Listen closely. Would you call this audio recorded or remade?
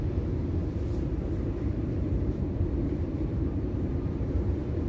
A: remade